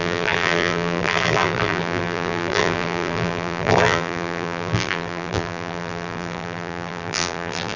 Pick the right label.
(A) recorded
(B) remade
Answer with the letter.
B